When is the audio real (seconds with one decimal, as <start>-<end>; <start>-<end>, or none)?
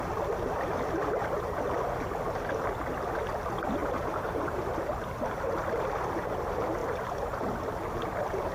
0.0-3.8; 4.8-8.5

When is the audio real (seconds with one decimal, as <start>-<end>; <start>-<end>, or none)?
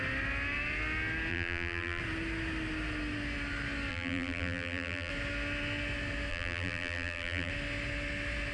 0.0-1.3; 2.0-3.9; 5.1-6.3; 7.5-8.5